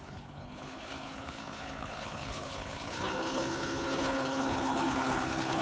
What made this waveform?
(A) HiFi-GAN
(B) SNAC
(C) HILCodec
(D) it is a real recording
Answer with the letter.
C